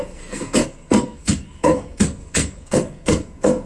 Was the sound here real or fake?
fake